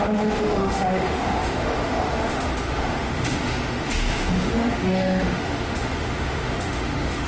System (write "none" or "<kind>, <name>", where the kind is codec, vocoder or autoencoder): autoencoder, DAC-VAE